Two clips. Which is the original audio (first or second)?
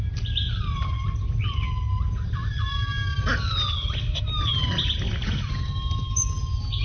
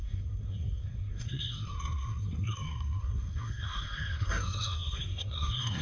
first